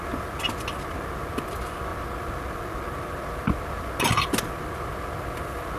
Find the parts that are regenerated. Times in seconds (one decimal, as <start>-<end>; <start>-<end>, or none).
none